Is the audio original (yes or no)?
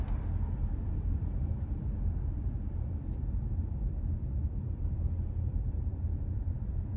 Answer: no